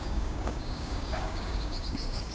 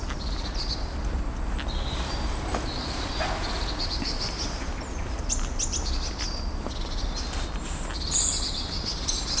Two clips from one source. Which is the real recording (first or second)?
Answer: second